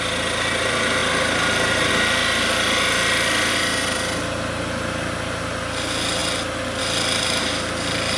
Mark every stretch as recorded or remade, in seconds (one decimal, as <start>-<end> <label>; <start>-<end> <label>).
0.0-8.2 recorded